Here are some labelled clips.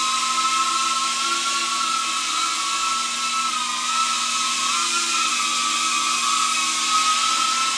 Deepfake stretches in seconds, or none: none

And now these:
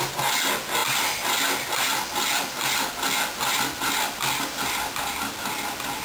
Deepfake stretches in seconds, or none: none

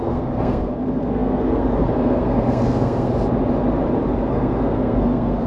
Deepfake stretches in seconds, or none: 0.0-3.1 (codec, SNAC); 4.3-5.5

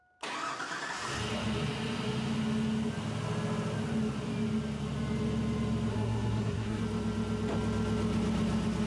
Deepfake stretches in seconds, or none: 5.9-6.8 (codec, SNAC)

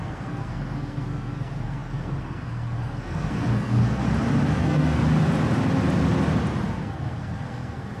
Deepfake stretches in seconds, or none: 0.0-4.0 (codec, SNAC); 4.5-5.0; 6.8-8.0

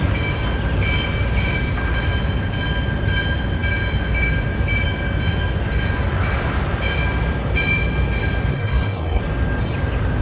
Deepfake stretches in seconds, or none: 8.5-9.2 (codec, SNAC)